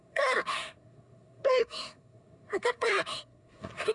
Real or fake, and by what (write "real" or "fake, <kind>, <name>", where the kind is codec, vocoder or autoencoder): fake, codec, SNAC